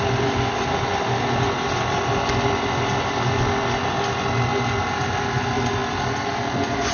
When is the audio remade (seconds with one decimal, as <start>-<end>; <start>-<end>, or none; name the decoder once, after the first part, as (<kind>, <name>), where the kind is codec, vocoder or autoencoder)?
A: none